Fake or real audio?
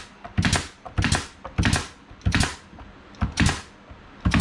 real